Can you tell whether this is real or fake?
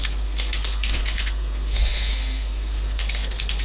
fake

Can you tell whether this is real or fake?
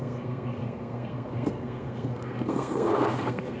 fake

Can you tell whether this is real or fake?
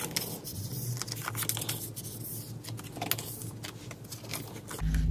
real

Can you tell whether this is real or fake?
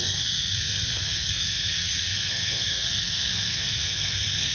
fake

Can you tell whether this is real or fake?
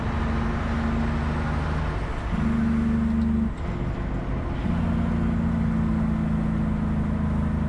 real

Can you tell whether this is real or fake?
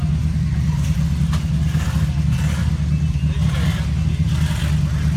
real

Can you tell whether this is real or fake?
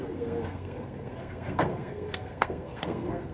fake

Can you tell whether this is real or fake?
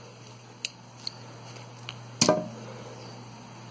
real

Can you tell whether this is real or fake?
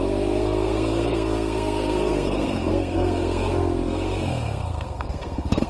fake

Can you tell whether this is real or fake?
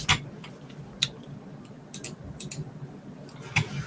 real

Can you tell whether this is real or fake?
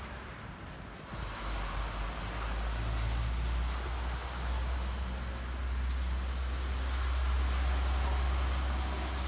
real